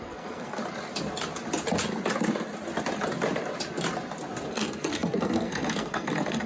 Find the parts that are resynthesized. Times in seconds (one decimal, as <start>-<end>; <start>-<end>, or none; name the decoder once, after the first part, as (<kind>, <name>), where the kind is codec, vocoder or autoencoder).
0.0-0.6 (codec, SNAC); 4.5-6.5